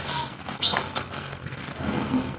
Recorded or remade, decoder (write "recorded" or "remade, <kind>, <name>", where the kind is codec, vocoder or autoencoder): remade, codec, SNAC